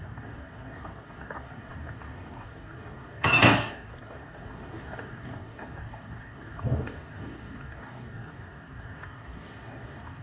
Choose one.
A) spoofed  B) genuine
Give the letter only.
A